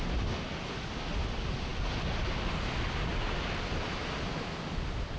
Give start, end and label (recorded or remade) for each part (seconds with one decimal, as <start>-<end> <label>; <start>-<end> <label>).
0.0-5.2 recorded